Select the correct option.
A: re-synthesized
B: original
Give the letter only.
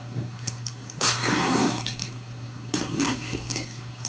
A